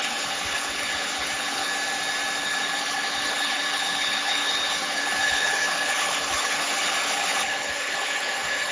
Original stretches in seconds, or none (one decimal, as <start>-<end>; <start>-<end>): 1.7-2.4